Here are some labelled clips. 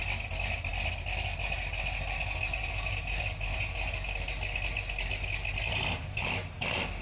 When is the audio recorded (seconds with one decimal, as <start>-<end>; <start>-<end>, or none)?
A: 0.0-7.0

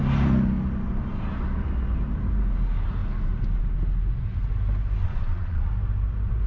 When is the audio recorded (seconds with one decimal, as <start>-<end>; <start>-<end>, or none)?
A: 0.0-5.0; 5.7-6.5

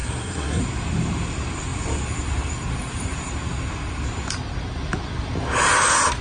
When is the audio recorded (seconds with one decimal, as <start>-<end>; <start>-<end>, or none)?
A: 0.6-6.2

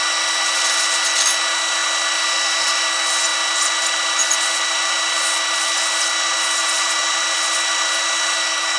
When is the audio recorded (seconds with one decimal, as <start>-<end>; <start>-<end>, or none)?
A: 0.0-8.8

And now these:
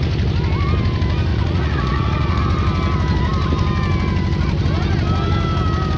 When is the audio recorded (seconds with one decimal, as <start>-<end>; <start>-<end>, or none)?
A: 0.0-1.3; 2.4-6.0

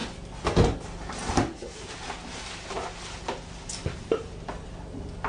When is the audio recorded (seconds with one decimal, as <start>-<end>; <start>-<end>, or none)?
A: 0.0-5.3